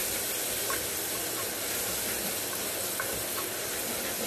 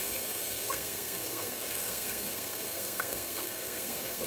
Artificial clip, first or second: second